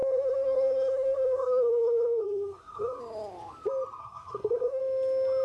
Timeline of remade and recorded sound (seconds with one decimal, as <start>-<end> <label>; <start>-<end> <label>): 0.0-3.0 remade; 3.0-4.0 recorded; 4.0-4.8 remade; 4.8-5.4 recorded